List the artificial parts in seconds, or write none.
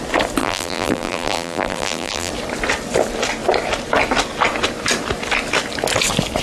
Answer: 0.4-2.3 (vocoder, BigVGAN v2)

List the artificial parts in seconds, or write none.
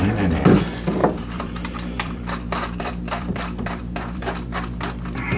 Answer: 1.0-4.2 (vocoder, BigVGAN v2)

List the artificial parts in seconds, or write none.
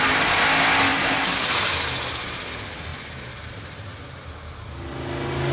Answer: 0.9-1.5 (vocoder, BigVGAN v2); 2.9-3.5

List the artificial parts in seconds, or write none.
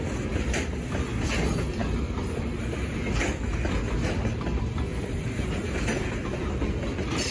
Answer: 1.8-2.6 (vocoder, BigVGAN v2); 4.9-5.4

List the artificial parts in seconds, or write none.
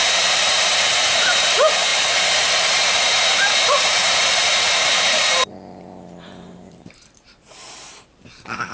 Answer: 0.0-8.7 (vocoder, BigVGAN v2)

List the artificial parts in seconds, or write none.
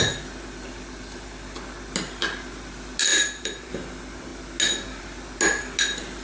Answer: 3.1-3.7 (vocoder, BigVGAN v2)